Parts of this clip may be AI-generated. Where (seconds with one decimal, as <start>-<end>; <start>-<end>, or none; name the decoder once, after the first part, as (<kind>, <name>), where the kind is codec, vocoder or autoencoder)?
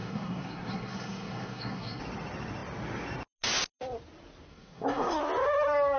0.0-2.0 (codec, SNAC); 4.5-5.2